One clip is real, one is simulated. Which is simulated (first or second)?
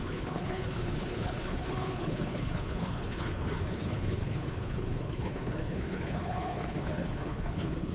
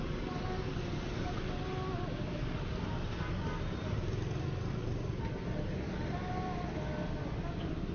first